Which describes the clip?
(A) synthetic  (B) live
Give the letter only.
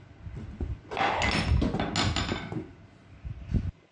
B